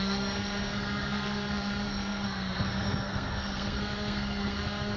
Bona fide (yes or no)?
no